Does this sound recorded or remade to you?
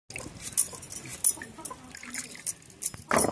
recorded